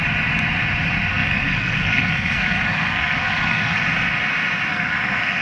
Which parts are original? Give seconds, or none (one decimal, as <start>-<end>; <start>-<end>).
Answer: 0.0-1.1; 3.8-4.7